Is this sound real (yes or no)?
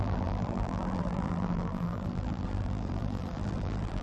no